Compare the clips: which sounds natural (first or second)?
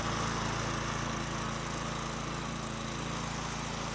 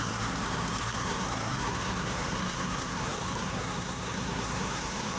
first